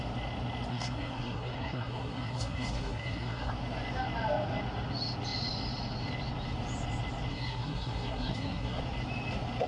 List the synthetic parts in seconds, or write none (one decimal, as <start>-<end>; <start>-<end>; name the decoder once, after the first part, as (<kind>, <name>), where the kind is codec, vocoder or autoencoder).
0.7-3.5 (codec, SNAC); 7.3-8.8